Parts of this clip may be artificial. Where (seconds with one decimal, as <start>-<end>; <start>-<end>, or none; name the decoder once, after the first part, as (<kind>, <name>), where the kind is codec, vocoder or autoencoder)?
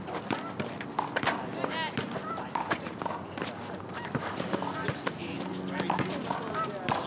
2.2-5.6 (vocoder, BigVGAN v2)